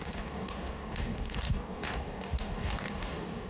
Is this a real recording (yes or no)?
no